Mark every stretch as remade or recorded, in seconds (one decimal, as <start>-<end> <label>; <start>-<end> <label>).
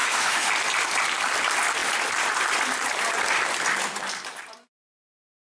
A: 0.0-0.5 remade; 0.5-5.4 recorded